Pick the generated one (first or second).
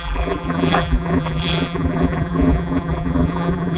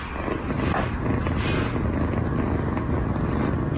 first